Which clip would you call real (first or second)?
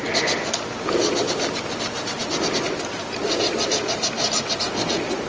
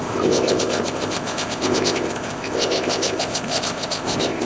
first